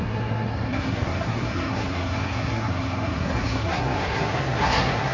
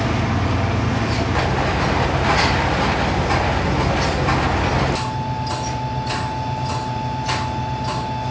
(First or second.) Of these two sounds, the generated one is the first